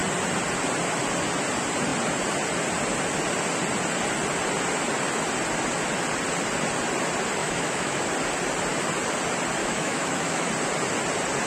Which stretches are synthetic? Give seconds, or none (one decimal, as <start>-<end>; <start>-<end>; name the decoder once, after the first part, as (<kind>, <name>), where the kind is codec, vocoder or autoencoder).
7.4-8.1 (autoencoder, DAC-VAE); 9.6-10.5